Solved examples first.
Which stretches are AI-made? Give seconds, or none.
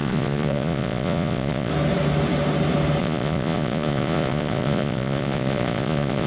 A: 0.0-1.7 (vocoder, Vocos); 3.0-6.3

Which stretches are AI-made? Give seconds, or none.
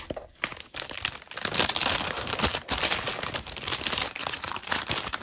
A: 4.2-4.8 (vocoder, Vocos)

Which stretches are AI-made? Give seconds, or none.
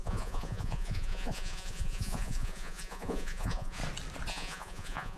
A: 0.0-3.8 (vocoder, Vocos); 4.3-5.2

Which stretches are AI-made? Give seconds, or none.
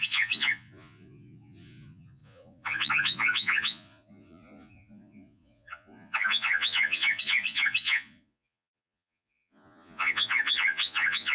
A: 0.0-11.3 (vocoder, Vocos)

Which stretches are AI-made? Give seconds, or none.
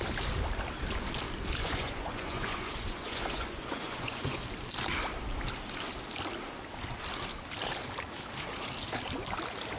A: 1.6-4.4 (vocoder, Vocos)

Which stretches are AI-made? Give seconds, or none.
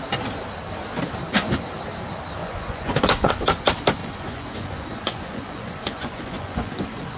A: 2.4-3.3 (vocoder, Vocos); 4.0-7.2